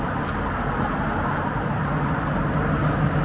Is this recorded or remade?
recorded